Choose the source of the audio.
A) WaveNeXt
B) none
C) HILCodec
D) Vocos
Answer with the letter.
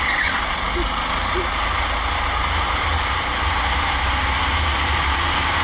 B